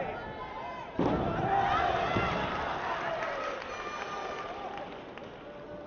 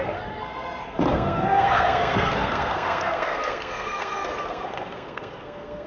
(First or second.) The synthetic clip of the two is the second